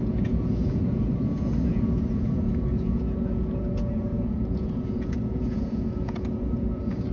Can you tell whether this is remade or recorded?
remade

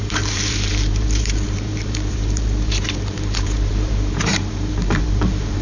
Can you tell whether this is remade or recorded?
remade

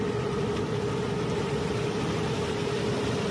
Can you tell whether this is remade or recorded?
remade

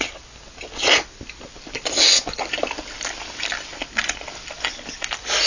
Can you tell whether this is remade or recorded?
recorded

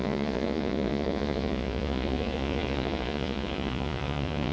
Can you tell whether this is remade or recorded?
remade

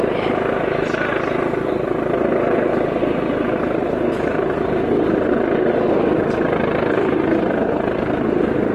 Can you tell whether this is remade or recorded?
recorded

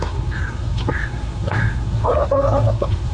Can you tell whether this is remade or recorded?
remade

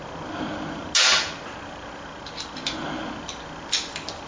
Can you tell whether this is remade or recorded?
recorded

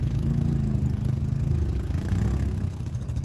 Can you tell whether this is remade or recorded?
remade